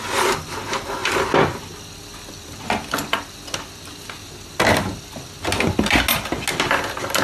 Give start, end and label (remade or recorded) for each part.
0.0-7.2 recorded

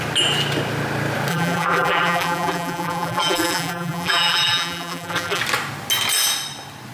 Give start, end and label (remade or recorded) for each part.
0.0-1.3 recorded; 1.3-5.4 remade; 5.4-6.9 recorded

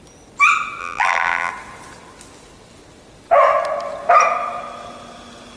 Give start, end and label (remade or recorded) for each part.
0.0-0.8 recorded; 0.8-1.5 remade; 1.5-5.6 recorded